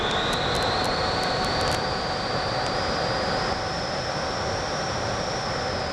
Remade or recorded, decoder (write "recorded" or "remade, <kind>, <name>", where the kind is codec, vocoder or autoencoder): recorded